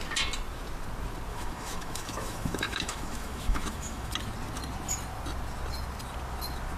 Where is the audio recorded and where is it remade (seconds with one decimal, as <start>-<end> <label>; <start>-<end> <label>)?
0.0-1.3 recorded; 1.3-4.1 remade; 4.1-6.8 recorded